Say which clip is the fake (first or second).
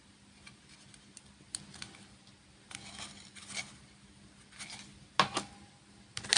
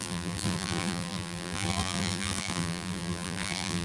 second